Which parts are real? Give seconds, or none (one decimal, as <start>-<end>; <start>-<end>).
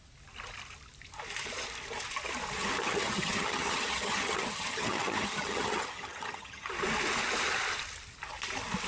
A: 0.0-2.8; 6.7-8.9